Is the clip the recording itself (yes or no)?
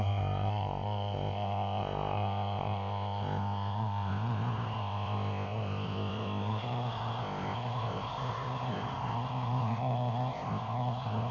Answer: no